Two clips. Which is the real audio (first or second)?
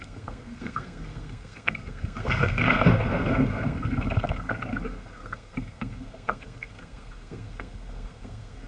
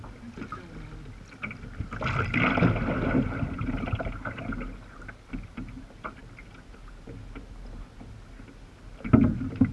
second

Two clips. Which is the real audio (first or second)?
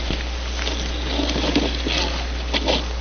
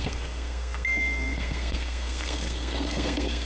first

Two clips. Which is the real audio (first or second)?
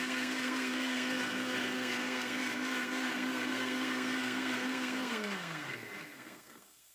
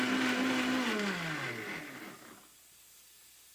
second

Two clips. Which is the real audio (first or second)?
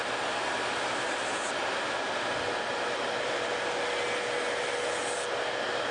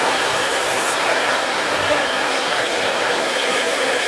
first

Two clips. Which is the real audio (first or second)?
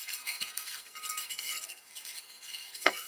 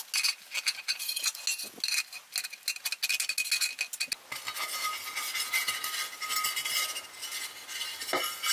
second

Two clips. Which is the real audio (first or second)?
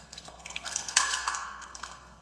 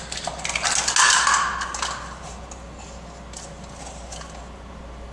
second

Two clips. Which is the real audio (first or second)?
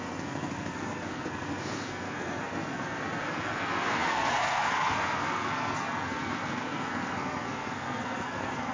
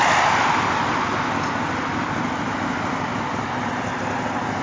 second